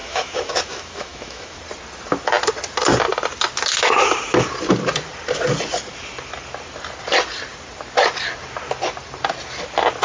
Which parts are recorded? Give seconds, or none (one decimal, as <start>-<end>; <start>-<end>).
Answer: 1.6-10.0